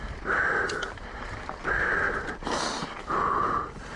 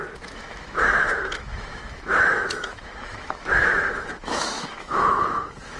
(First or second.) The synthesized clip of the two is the second